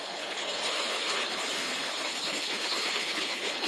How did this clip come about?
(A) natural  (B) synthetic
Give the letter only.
B